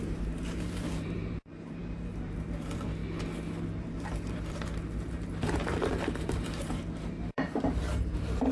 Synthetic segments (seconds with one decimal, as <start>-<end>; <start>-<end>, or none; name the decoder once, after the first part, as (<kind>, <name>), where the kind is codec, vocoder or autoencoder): 0.0-3.0 (vocoder, BigVGAN v2); 3.8-8.5